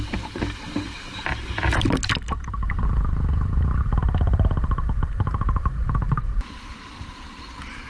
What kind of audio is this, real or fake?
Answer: fake